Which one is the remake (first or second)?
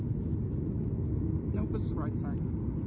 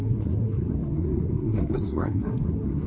second